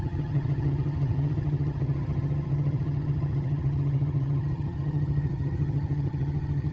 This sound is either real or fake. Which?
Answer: fake